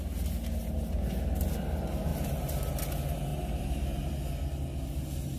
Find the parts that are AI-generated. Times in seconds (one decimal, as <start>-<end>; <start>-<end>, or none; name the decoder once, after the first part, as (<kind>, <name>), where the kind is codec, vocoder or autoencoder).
2.1-2.7 (vocoder, BigVGAN v2); 3.3-4.1